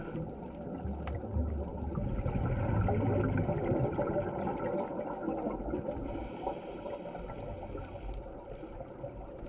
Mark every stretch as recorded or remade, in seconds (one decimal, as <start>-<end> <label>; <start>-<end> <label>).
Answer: 0.0-9.5 recorded